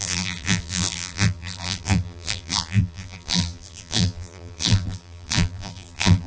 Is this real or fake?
fake